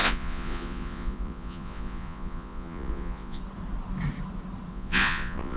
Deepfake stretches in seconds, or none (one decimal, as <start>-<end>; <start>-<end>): 0.0-3.4; 4.7-5.6